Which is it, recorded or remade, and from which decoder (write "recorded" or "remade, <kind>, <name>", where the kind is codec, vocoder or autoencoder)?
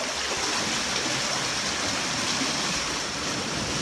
recorded